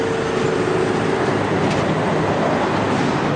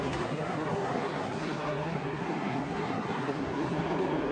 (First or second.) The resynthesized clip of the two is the second